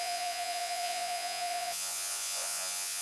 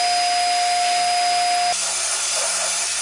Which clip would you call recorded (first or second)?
second